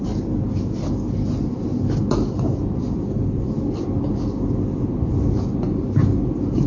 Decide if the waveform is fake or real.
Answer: real